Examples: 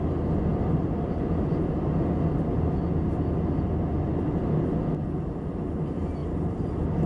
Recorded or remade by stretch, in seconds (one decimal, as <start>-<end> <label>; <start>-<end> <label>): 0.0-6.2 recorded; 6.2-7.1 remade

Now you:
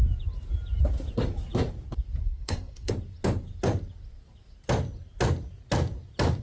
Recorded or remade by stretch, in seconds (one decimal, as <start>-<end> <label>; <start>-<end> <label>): 0.0-2.2 recorded; 2.2-2.9 remade; 2.9-6.4 recorded

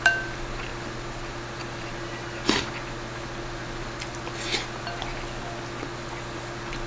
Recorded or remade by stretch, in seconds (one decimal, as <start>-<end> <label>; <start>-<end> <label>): 0.0-6.9 recorded

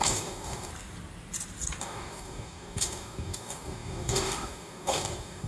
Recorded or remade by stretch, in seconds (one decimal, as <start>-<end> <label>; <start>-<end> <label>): 0.0-0.7 remade; 0.7-1.8 recorded; 1.8-5.5 remade